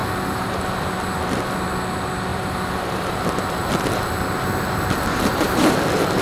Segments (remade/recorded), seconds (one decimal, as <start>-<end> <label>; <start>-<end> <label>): 0.0-0.6 remade; 0.6-2.3 recorded; 2.3-3.1 remade; 3.1-5.1 recorded; 5.1-5.8 remade; 5.8-6.2 recorded